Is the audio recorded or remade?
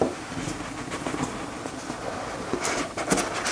recorded